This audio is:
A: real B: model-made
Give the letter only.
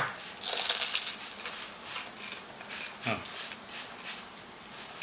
A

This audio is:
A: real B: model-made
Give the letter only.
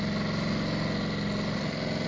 A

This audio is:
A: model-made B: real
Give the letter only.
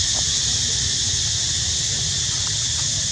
B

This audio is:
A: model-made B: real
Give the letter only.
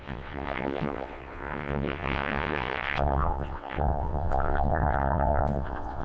A